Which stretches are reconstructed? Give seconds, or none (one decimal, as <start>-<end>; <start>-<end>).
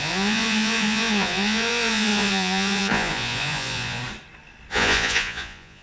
0.0-4.0; 4.7-5.8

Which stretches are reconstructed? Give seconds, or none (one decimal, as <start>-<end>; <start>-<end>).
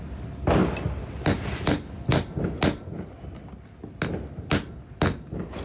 none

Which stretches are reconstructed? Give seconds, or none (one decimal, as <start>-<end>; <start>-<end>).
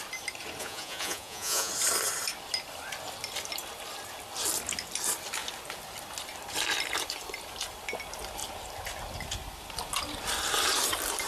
0.6-1.7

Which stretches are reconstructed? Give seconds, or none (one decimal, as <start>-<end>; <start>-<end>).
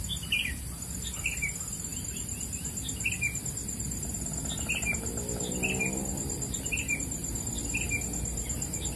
none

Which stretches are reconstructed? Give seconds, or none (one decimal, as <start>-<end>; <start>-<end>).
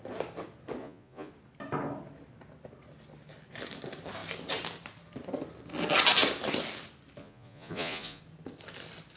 0.8-1.3; 7.2-8.2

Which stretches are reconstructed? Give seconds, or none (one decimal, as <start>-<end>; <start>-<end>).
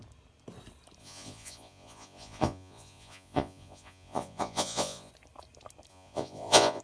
1.0-5.1; 5.9-6.8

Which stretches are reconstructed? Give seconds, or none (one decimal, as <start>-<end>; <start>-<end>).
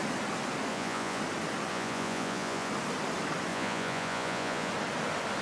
0.7-1.2; 1.7-2.7; 3.5-4.7